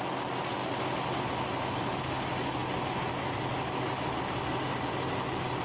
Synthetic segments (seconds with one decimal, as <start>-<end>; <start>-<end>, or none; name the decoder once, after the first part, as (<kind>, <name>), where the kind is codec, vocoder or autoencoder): none